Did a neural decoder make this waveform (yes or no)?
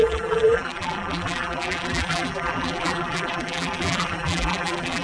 yes